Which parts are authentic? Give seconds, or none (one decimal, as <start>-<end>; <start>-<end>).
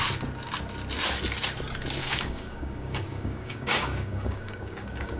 0.0-2.0